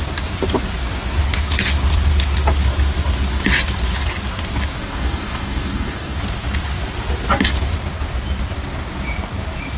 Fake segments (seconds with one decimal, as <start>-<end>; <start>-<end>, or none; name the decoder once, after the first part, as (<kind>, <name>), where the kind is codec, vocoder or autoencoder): 4.8-6.2 (codec, DAC)